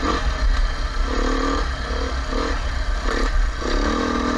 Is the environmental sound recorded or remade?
recorded